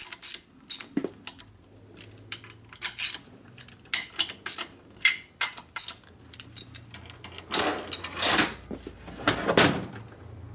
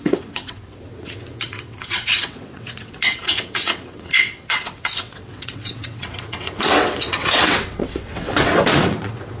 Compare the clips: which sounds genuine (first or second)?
first